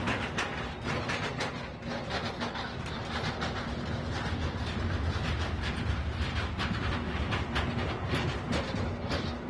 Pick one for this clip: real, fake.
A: real